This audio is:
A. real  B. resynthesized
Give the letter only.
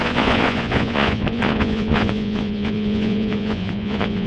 B